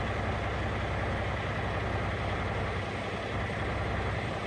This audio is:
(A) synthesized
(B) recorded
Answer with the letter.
B